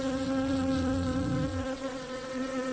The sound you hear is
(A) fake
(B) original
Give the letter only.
A